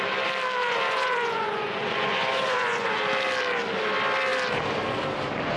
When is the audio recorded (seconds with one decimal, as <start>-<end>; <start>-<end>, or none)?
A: 0.0-0.6; 3.0-5.6